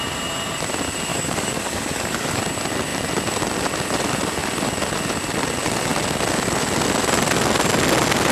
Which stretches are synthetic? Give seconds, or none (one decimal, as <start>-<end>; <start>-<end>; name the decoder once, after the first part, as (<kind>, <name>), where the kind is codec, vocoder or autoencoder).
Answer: 1.1-2.4 (codec, DAC)